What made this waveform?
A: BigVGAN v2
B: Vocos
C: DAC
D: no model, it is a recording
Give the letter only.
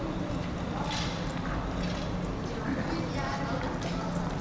D